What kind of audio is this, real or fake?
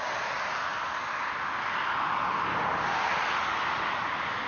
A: real